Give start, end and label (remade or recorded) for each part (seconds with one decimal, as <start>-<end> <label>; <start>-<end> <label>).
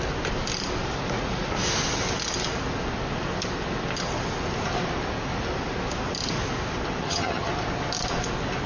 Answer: 0.0-7.0 recorded; 7.0-7.5 remade; 7.5-8.7 recorded